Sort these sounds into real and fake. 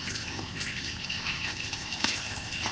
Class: fake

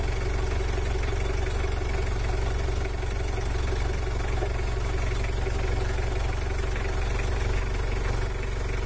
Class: real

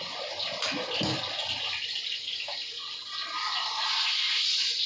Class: real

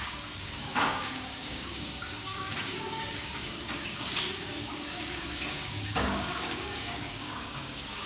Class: fake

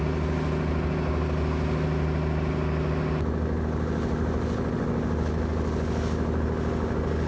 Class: real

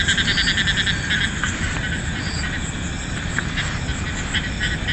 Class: real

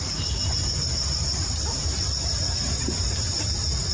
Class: fake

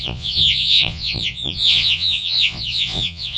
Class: fake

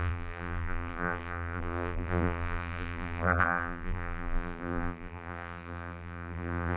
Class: fake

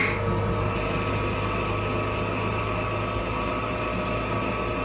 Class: real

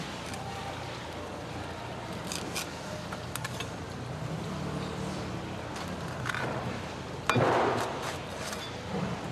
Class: real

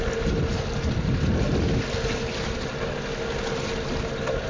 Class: real